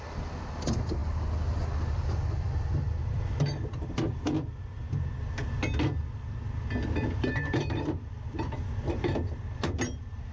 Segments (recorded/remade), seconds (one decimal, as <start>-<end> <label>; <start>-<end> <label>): 0.0-10.3 recorded